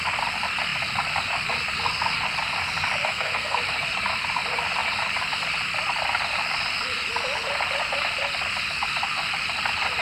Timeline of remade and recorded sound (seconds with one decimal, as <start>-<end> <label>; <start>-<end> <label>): 0.0-3.1 recorded; 3.1-3.6 remade; 3.6-10.0 recorded